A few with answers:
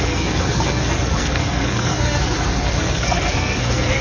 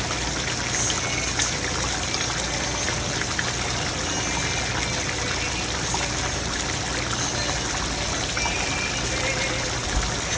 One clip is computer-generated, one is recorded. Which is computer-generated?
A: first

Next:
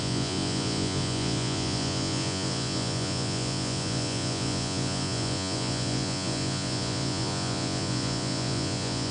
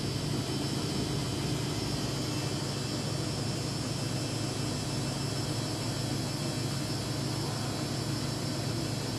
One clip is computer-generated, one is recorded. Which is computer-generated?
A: first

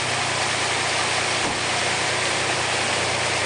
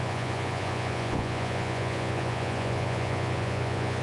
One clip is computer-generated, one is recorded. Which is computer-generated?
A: second